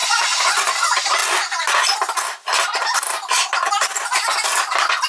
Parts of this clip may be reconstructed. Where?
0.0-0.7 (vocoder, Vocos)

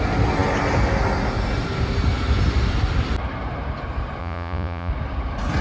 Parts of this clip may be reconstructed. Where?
4.2-4.9 (vocoder, Vocos)